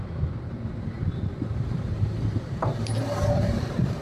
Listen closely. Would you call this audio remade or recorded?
remade